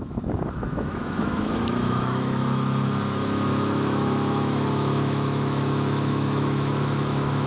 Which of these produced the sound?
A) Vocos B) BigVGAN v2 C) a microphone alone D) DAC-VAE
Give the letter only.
D